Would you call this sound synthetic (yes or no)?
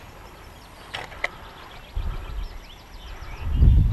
no